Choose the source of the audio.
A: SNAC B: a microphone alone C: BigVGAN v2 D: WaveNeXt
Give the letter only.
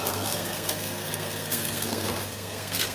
A